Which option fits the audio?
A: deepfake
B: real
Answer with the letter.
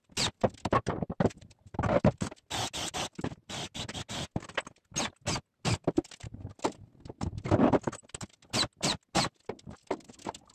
B